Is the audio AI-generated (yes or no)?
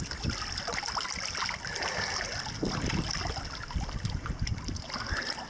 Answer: no